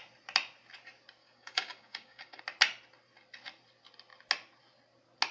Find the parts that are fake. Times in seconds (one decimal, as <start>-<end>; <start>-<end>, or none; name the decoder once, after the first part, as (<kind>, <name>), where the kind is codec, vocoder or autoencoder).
1.2-2.4 (codec, DAC)